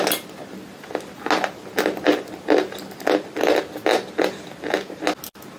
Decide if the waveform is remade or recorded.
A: recorded